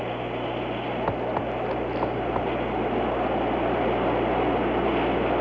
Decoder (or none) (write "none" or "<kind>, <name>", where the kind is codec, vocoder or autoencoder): none